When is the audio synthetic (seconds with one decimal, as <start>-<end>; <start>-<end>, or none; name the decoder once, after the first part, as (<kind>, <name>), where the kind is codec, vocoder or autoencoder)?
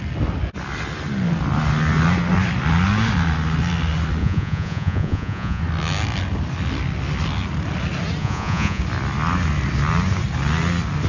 4.2-5.6 (vocoder, Vocos); 8.2-8.8